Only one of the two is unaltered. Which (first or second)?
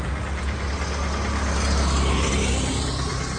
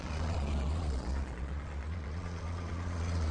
first